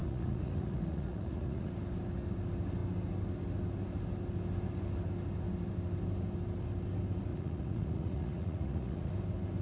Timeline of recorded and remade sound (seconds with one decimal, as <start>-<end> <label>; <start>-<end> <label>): 0.0-1.7 remade; 1.7-7.3 recorded; 7.3-9.1 remade; 9.1-9.6 recorded